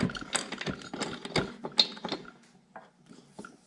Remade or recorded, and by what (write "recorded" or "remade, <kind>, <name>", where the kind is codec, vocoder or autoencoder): recorded